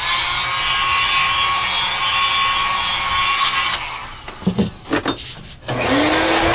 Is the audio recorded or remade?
recorded